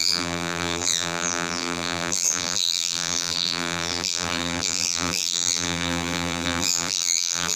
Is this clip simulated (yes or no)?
yes